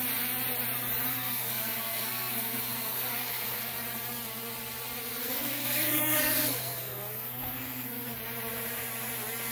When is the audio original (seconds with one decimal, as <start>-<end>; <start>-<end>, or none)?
0.0-1.1; 3.6-5.2; 8.2-9.5